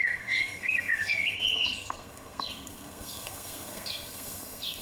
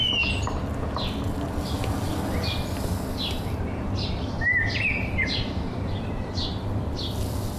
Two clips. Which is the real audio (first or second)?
second